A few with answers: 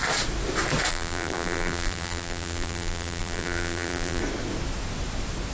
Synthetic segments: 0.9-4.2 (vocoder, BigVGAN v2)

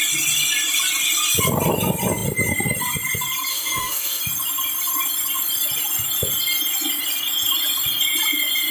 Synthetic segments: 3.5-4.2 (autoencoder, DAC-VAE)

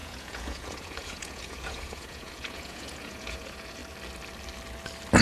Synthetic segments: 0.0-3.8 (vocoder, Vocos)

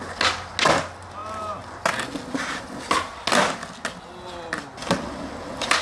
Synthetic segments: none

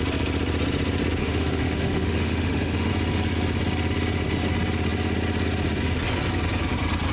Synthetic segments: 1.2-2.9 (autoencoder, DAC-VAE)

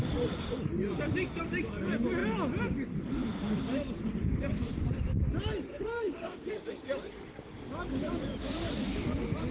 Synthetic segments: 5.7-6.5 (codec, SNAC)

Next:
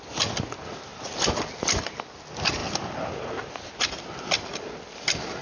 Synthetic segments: none

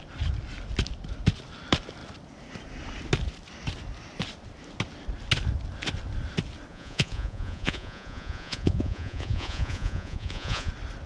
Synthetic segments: 6.7-10.7 (vocoder, Vocos)